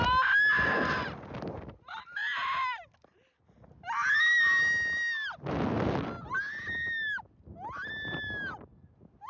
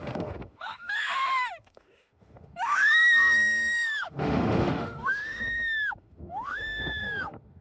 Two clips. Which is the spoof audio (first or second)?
second